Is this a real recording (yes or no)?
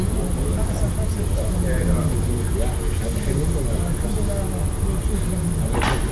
yes